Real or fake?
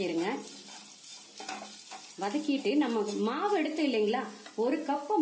real